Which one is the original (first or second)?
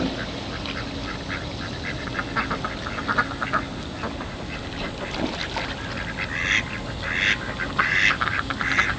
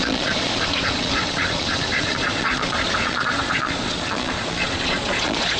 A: first